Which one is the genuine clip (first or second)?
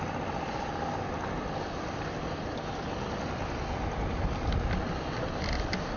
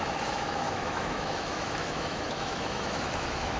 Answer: first